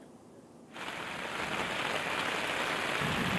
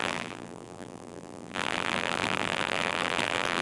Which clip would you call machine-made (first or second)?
second